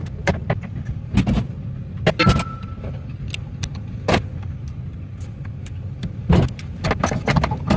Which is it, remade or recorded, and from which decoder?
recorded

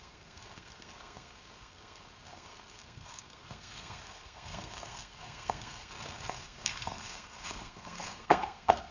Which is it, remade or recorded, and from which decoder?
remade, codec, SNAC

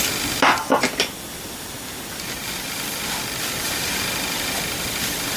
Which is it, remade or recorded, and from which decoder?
recorded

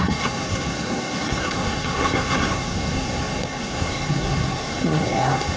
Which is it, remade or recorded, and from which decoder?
remade, codec, SNAC